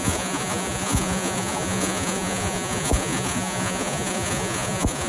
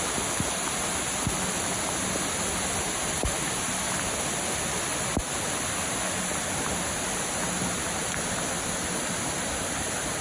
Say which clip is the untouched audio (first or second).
second